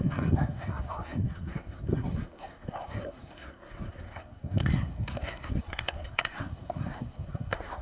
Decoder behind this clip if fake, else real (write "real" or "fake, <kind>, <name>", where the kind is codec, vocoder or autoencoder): fake, codec, SNAC